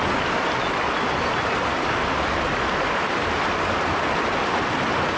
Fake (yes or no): no